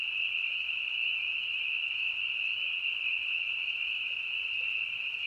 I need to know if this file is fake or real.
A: real